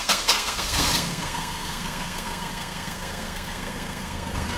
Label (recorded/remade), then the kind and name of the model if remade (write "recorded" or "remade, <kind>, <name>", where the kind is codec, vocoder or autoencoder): remade, codec, SNAC